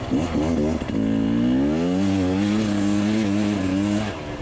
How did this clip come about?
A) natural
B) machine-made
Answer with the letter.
A